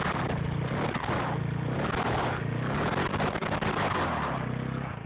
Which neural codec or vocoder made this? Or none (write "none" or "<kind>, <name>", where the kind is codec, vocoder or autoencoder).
none